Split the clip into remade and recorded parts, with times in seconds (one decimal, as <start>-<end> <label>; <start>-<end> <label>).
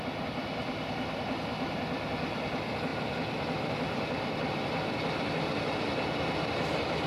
0.0-7.1 recorded